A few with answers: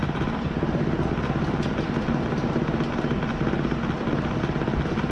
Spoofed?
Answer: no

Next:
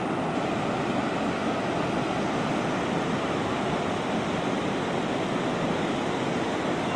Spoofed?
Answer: no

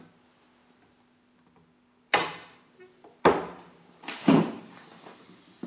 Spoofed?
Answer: no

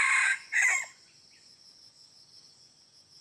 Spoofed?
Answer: yes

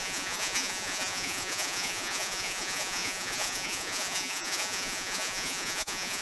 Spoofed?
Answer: yes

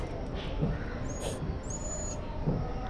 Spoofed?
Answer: no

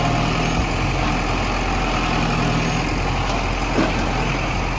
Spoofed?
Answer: no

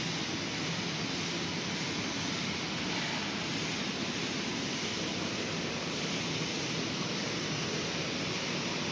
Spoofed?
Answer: no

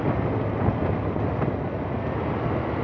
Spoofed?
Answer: no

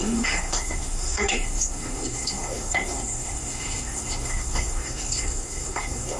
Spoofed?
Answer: yes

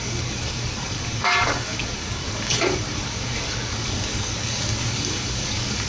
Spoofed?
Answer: yes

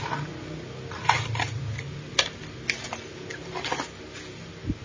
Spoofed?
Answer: no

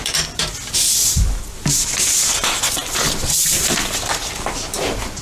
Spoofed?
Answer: yes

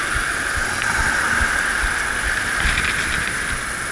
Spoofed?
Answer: no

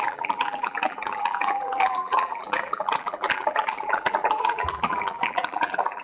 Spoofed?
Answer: yes